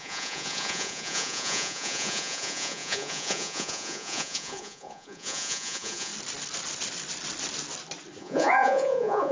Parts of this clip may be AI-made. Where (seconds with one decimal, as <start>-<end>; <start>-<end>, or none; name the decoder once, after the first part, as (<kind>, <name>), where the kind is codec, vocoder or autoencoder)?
0.0-6.1 (vocoder, Vocos); 8.2-9.3